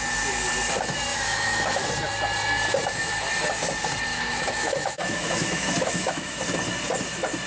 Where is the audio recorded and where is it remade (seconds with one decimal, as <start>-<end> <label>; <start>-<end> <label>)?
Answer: 0.0-1.1 recorded; 1.1-1.9 remade; 1.9-4.1 recorded; 4.1-6.4 remade; 6.4-7.5 recorded